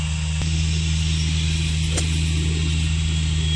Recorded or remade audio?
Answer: recorded